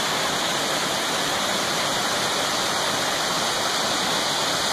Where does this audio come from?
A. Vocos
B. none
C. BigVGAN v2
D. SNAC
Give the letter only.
B